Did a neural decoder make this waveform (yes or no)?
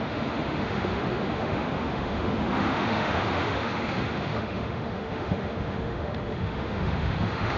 yes